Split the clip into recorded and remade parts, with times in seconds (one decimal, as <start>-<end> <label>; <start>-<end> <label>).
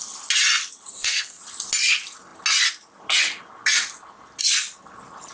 0.0-0.9 recorded; 0.9-1.4 remade; 1.4-5.3 recorded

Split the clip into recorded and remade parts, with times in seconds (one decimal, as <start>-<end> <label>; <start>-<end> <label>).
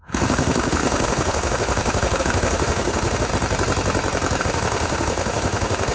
0.0-3.3 remade; 3.3-4.4 recorded; 4.4-5.9 remade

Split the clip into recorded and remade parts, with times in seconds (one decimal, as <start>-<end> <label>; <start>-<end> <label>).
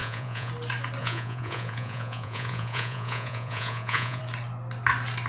0.0-0.5 remade; 0.5-1.0 recorded; 1.0-4.2 remade; 4.2-5.3 recorded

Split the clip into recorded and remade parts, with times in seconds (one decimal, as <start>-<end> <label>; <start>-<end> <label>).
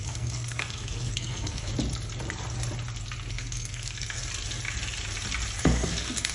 0.0-1.7 remade; 1.7-3.3 recorded; 3.3-4.2 remade; 4.2-5.6 recorded; 5.6-6.3 remade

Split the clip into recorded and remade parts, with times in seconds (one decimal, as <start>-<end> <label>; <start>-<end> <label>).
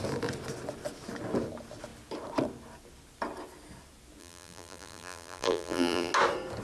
0.0-4.2 recorded; 4.2-6.1 remade; 6.1-6.6 recorded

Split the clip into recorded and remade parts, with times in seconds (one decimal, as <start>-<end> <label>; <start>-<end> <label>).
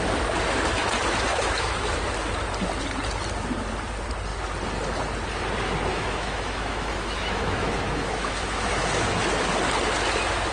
0.0-1.3 recorded; 1.3-2.0 remade; 2.0-5.9 recorded; 5.9-9.2 remade; 9.2-10.5 recorded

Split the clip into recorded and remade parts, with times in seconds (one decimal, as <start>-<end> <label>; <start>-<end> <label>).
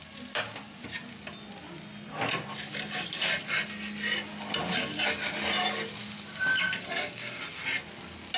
0.0-6.5 recorded; 6.5-7.4 remade; 7.4-8.4 recorded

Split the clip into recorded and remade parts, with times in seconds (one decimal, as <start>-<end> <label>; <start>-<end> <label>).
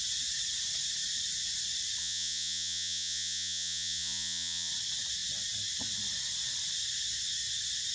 0.0-2.0 recorded; 2.0-4.7 remade; 4.7-7.9 recorded